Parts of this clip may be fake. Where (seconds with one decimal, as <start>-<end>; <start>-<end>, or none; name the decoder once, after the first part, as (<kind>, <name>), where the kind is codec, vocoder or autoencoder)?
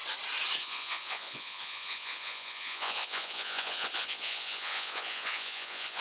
0.6-6.0 (vocoder, Vocos)